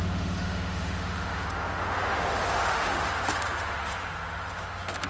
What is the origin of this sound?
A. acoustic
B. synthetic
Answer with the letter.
B